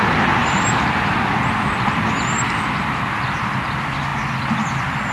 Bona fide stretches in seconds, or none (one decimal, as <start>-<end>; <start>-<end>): 0.0-0.4; 1.1-4.1